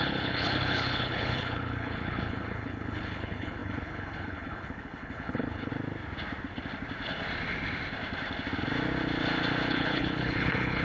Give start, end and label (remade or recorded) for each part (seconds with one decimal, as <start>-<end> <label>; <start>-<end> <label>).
0.0-5.7 remade; 5.7-9.7 recorded; 9.7-10.8 remade